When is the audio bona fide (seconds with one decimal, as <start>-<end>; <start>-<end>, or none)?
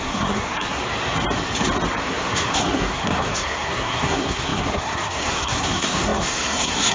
0.8-2.0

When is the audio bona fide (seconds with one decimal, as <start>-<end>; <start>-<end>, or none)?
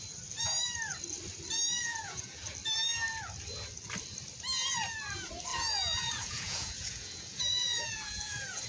0.0-1.8; 2.4-5.5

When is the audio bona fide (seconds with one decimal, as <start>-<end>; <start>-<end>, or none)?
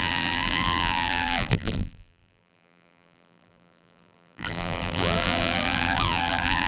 none